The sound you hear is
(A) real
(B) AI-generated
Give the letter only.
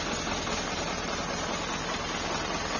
A